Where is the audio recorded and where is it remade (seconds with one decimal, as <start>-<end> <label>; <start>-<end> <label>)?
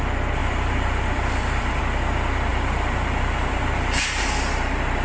0.0-0.4 recorded; 0.4-1.8 remade; 1.8-2.5 recorded; 2.5-4.5 remade; 4.5-5.0 recorded